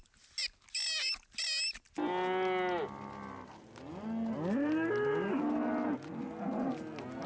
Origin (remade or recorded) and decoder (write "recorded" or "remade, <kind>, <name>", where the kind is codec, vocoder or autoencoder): recorded